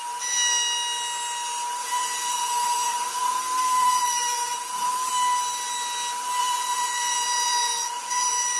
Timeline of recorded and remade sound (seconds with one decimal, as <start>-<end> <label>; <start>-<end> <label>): 0.0-1.8 recorded; 1.8-5.1 remade; 5.1-6.4 recorded; 6.4-8.6 remade